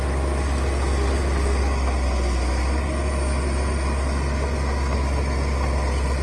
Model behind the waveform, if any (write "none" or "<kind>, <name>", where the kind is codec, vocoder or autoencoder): none